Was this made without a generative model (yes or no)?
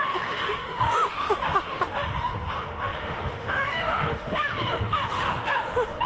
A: no